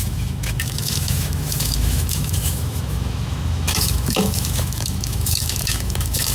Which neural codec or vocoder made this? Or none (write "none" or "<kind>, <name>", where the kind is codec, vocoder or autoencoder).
autoencoder, DAC-VAE